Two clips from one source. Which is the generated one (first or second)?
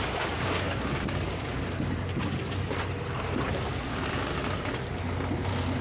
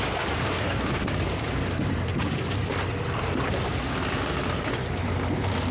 second